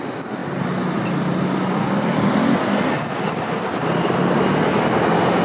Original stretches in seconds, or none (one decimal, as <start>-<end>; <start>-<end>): 0.0-5.4